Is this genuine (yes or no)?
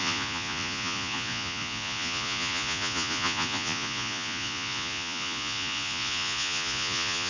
no